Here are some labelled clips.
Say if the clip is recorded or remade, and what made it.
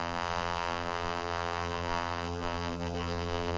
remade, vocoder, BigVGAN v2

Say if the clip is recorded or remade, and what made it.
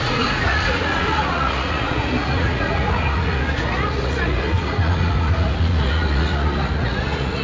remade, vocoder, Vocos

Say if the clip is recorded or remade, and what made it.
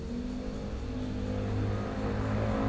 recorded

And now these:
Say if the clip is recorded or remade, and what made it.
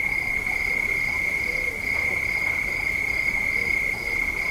recorded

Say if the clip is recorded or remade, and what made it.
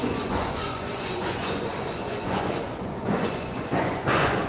remade, vocoder, Vocos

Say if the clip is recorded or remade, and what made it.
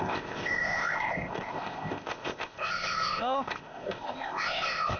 remade, codec, ZipCodec